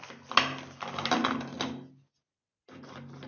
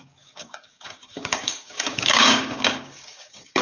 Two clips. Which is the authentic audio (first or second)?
first